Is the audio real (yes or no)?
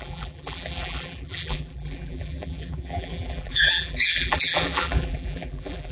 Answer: no